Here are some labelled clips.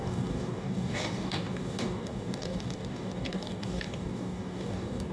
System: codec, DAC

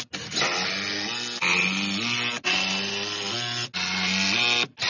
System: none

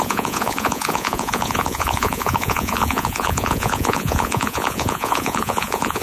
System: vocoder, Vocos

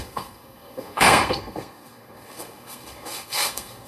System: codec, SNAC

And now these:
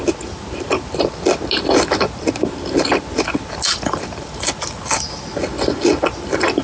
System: none